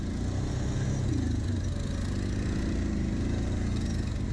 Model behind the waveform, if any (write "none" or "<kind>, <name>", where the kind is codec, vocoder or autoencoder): none